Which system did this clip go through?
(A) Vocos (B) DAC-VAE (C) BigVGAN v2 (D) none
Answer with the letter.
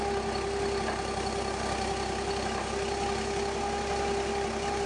D